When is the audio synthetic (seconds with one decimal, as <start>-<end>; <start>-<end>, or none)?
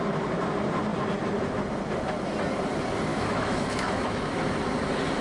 3.1-4.4